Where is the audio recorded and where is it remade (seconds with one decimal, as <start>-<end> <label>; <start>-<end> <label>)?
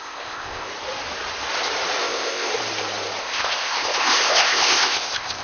0.0-0.7 remade; 0.7-2.0 recorded; 2.0-2.5 remade; 2.5-3.2 recorded; 3.2-5.4 remade